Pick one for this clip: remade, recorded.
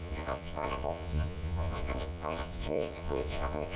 remade